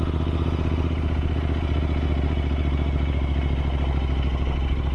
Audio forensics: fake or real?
real